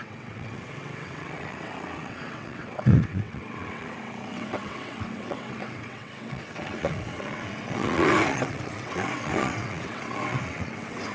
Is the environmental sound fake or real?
fake